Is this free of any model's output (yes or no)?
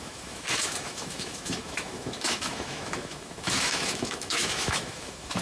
no